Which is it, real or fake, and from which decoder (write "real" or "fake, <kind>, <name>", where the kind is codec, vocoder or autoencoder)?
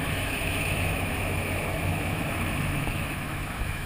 fake, autoencoder, DAC-VAE